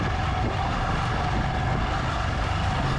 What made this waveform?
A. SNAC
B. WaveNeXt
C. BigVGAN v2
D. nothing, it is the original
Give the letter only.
D